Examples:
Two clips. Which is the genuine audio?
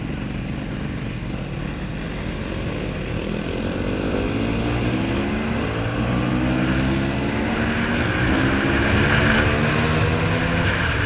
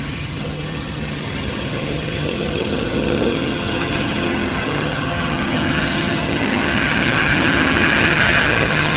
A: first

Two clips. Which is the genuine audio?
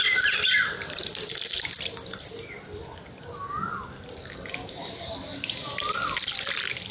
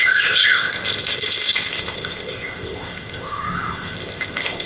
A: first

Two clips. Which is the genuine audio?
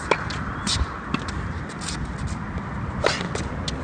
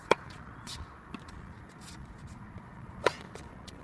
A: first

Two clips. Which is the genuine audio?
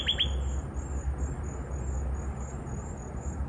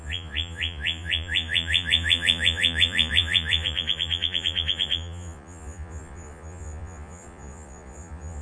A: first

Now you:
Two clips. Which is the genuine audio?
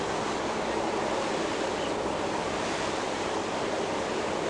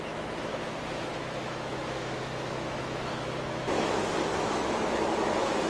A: first